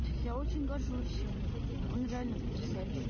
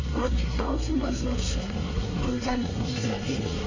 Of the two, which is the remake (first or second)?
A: second